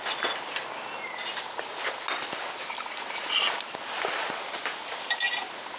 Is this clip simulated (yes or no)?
no